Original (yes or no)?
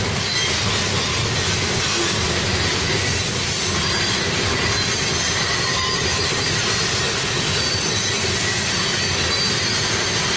yes